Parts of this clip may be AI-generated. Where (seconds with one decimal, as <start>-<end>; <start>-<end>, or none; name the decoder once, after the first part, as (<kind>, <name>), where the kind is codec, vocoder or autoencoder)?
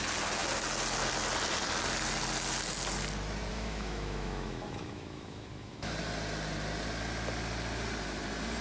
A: 3.5-5.9 (autoencoder, DAC-VAE)